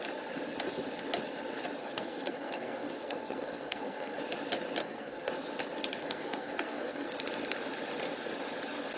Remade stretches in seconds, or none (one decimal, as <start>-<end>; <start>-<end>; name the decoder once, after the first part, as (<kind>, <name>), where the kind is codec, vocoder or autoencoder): 1.8-4.2 (codec, SNAC); 4.8-5.3; 6.0-7.1